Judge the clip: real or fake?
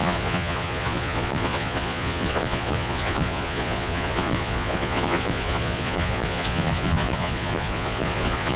fake